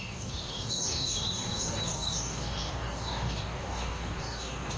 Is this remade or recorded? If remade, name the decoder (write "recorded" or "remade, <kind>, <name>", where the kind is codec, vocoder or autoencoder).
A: remade, codec, DAC